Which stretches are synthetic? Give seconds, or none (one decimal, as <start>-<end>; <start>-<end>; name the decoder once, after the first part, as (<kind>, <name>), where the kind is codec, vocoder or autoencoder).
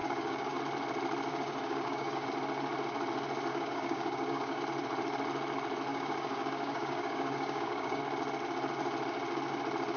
0.0-0.6 (codec, DAC); 1.3-2.3; 3.5-4.6; 5.9-8.0